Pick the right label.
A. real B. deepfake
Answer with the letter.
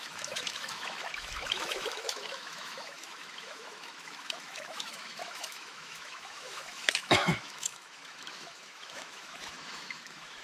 B